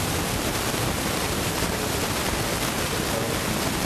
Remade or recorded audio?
recorded